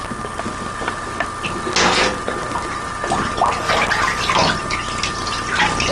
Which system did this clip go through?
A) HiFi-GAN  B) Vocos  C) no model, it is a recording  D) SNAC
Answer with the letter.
C